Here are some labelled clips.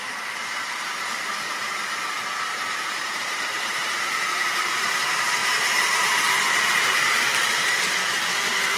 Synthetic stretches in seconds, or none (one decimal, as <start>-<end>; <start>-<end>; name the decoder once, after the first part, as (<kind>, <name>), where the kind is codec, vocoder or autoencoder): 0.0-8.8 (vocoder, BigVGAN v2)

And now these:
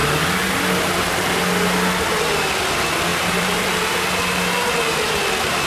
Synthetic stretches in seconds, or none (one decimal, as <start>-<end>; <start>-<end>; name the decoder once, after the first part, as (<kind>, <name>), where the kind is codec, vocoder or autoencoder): 3.1-4.5 (vocoder, BigVGAN v2)

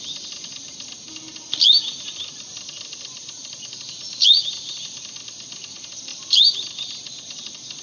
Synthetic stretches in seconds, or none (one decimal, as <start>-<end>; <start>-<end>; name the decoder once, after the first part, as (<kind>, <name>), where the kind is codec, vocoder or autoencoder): 2.5-5.1 (vocoder, BigVGAN v2); 6.1-7.8

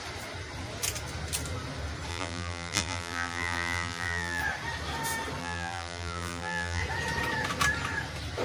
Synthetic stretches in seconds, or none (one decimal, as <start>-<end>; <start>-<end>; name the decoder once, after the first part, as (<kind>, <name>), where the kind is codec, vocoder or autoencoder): 2.1-4.4 (vocoder, BigVGAN v2); 5.4-6.8